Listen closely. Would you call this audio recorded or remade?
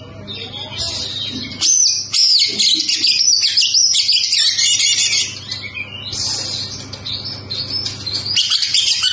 recorded